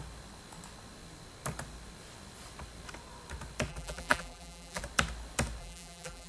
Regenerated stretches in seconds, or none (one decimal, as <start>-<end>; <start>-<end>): 3.7-4.8; 5.6-6.3